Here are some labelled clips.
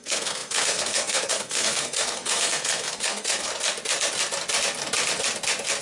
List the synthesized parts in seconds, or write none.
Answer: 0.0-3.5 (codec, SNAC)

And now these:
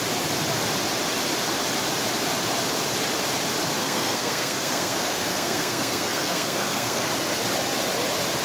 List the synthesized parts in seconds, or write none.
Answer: 3.8-7.1 (codec, SNAC)

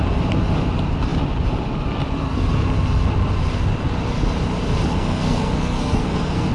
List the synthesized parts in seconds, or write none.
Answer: 4.9-6.5 (codec, SNAC)

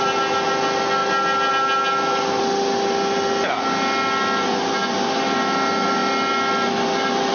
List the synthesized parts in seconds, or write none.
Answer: none

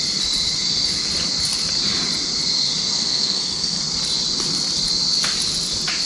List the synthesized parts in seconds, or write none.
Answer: 2.9-3.8 (codec, SNAC)

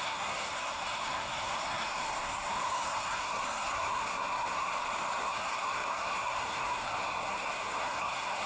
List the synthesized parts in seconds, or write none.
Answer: 0.0-4.7 (codec, SNAC); 5.2-8.5